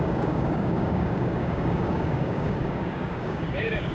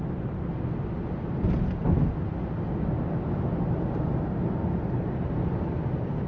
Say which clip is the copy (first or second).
first